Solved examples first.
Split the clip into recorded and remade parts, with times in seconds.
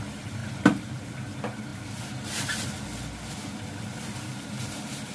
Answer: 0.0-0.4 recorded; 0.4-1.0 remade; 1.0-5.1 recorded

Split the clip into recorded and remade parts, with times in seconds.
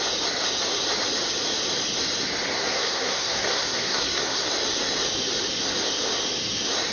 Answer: 0.0-2.6 recorded; 2.6-4.5 remade; 4.5-6.9 recorded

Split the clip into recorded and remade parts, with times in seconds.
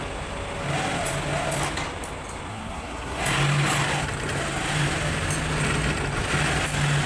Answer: 0.0-2.5 recorded; 2.5-3.2 remade; 3.2-7.1 recorded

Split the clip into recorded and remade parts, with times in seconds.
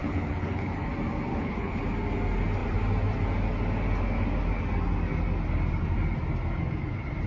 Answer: 0.0-0.9 remade; 0.9-1.3 recorded; 1.3-1.8 remade; 1.8-7.3 recorded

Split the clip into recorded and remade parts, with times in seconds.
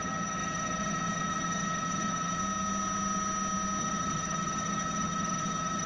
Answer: 0.0-2.4 remade; 2.4-3.8 recorded; 3.8-5.9 remade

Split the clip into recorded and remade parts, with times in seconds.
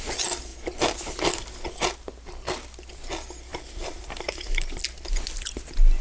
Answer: 0.0-3.5 recorded; 3.5-4.8 remade; 4.8-6.0 recorded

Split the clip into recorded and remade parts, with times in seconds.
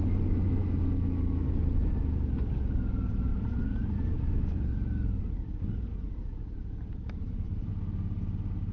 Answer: 0.0-3.3 recorded; 3.3-5.3 remade; 5.3-5.9 recorded; 5.9-7.7 remade; 7.7-8.7 recorded